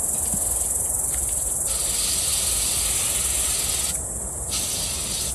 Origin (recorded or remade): recorded